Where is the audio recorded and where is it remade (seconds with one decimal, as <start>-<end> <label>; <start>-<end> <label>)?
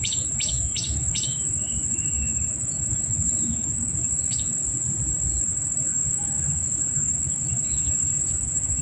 0.0-4.6 remade; 4.6-5.4 recorded; 5.4-8.8 remade